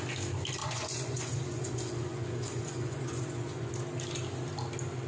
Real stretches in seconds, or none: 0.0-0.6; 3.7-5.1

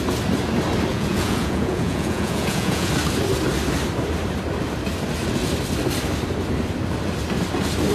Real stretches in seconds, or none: 0.0-0.9; 2.9-7.9

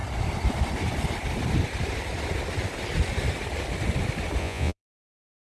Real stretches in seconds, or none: 0.0-4.4; 4.9-5.5

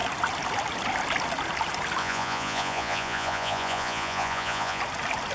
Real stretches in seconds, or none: 0.0-2.0; 4.8-5.3

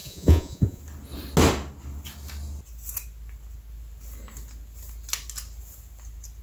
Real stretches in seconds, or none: 0.8-6.4